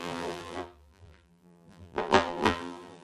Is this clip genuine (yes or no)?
no